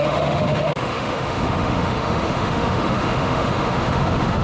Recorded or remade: remade